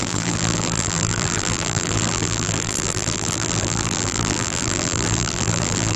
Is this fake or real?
fake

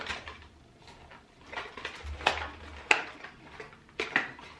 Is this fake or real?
real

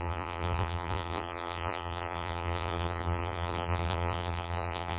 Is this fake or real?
fake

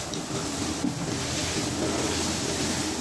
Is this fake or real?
real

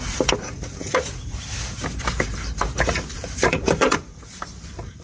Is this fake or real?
fake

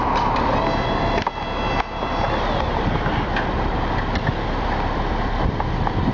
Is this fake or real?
fake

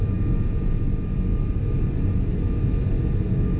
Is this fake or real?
real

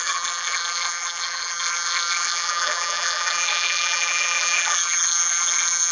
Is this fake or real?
fake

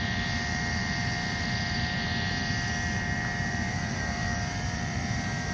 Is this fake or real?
fake